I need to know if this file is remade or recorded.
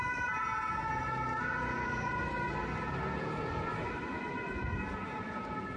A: recorded